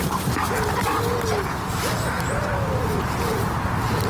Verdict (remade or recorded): recorded